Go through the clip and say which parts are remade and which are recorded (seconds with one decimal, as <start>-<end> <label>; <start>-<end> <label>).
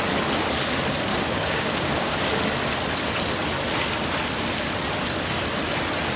0.0-1.1 recorded; 1.1-2.1 remade; 2.1-6.2 recorded